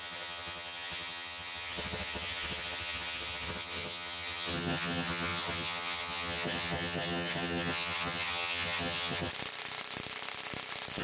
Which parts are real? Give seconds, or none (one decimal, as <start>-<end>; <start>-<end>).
9.3-11.0